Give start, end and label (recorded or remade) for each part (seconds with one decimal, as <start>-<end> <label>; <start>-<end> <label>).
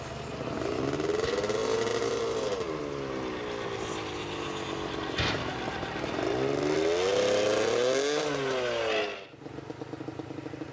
0.0-10.7 recorded